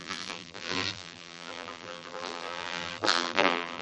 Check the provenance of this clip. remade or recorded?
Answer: remade